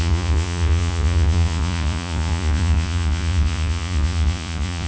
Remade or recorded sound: remade